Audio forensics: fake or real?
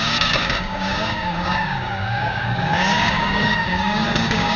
fake